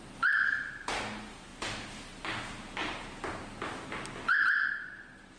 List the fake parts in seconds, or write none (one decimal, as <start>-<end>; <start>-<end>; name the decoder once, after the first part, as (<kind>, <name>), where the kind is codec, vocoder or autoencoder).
none